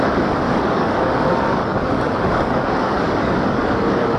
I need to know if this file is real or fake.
fake